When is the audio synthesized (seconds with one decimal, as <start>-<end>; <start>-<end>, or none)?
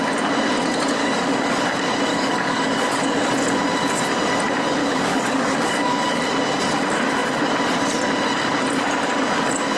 1.0-1.7; 2.1-3.3; 4.8-6.2